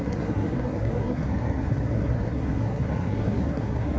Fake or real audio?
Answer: fake